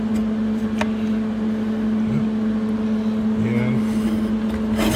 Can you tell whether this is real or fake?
real